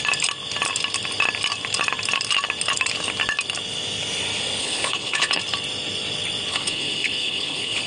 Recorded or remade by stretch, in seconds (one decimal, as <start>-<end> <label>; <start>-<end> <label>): 0.0-4.6 recorded; 4.6-5.4 remade; 5.4-6.5 recorded; 6.5-7.9 remade